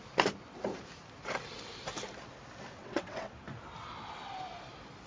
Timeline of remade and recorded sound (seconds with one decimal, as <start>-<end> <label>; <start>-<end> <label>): 0.0-2.8 recorded; 2.8-3.3 remade; 3.3-5.1 recorded

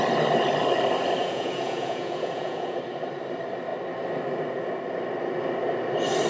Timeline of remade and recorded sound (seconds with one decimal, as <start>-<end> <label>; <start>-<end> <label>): 0.0-1.2 recorded; 1.2-2.8 remade; 2.8-6.3 recorded

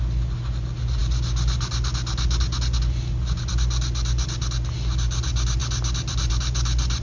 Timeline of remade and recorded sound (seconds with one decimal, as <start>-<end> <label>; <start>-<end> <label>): 0.0-7.0 recorded

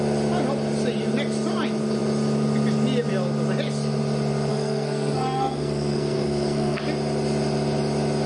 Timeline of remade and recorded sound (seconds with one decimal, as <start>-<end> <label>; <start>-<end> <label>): 0.0-4.5 recorded; 4.5-6.8 remade; 6.8-8.3 recorded

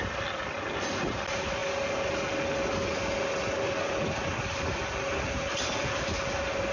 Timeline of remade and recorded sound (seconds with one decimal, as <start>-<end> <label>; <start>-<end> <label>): 0.0-6.7 recorded

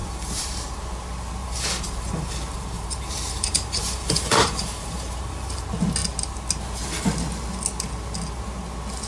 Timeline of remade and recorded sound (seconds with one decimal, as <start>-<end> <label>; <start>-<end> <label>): 0.0-0.8 remade; 0.8-1.4 recorded; 1.4-5.6 remade; 5.6-9.1 recorded

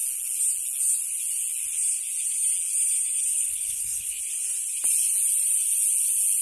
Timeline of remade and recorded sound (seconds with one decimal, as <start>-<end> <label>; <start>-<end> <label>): 0.0-3.3 recorded; 3.3-4.2 remade; 4.2-6.4 recorded

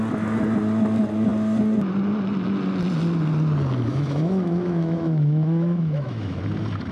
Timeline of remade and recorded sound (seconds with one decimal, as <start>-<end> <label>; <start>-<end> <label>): 0.0-3.9 recorded; 3.9-6.4 remade; 6.4-6.9 recorded